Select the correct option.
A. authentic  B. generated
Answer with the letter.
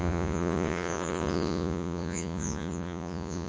B